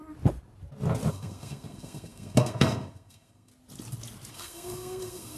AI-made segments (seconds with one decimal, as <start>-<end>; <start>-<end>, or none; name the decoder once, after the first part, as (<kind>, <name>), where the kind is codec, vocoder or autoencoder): 1.1-3.5 (codec, SNAC); 4.3-5.4